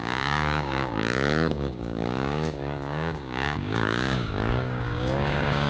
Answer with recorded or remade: remade